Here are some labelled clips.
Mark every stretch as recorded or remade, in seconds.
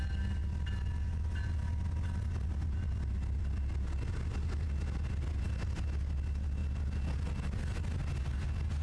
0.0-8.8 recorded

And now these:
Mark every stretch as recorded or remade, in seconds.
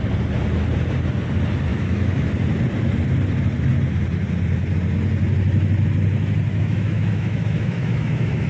0.0-1.7 recorded; 1.7-2.3 remade; 2.3-6.5 recorded; 6.5-8.5 remade